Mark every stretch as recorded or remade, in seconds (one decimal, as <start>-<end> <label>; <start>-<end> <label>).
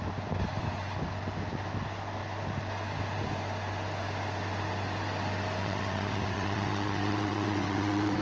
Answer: 0.0-5.6 recorded; 5.6-8.2 remade